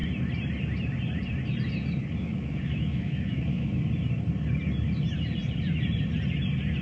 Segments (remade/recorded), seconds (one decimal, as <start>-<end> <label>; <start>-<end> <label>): 0.0-2.2 recorded; 2.2-3.8 remade; 3.8-6.8 recorded